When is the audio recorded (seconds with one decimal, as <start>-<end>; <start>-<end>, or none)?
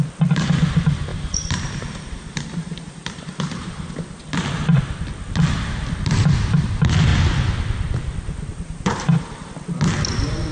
0.0-1.1; 4.2-8.5; 9.5-10.5